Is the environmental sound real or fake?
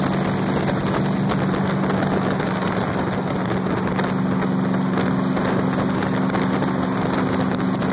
real